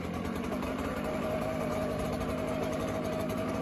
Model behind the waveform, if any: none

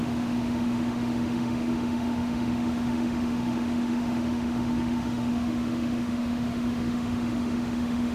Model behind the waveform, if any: autoencoder, DAC-VAE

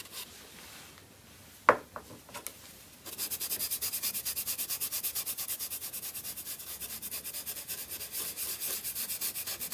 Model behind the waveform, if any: none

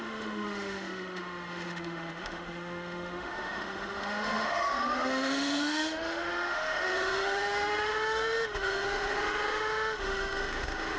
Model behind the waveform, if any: autoencoder, DAC-VAE